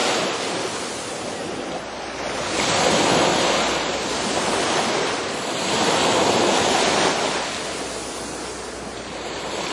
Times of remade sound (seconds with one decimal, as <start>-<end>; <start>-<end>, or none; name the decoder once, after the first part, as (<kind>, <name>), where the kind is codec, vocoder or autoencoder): none